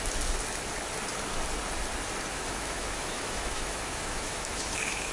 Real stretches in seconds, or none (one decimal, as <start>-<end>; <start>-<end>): 0.0-2.3